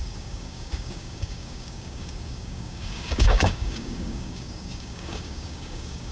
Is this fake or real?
fake